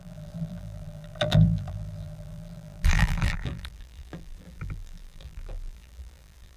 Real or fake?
fake